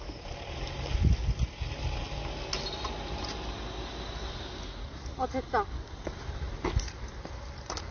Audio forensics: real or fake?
real